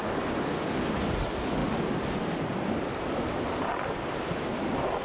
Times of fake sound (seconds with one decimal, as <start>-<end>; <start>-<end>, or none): none